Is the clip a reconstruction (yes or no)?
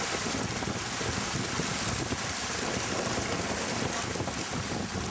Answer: no